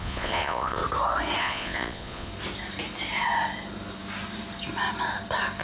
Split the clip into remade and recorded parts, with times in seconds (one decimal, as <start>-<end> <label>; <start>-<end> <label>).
0.0-0.8 remade; 0.8-1.4 recorded; 1.4-2.3 remade; 2.3-5.6 recorded